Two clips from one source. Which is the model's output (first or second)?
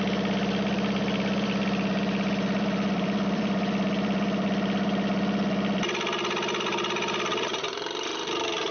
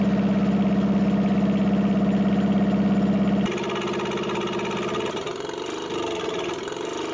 first